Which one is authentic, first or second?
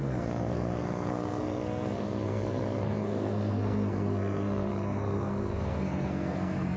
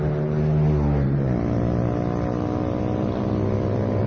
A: second